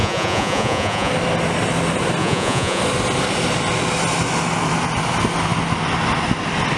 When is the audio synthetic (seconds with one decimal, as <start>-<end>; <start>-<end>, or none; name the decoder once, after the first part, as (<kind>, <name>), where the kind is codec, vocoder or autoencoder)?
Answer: 0.0-1.1 (vocoder, Vocos); 2.2-2.8